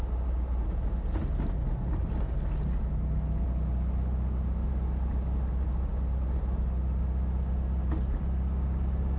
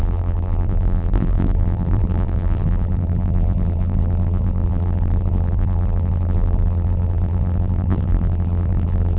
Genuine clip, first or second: first